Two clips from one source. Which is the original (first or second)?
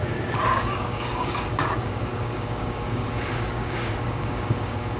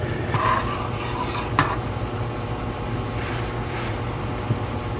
second